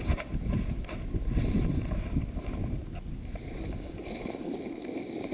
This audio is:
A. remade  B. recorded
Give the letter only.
B